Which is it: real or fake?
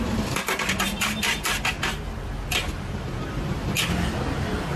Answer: real